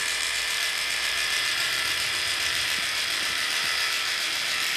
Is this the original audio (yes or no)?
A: no